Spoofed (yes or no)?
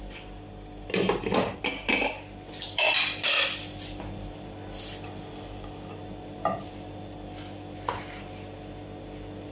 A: no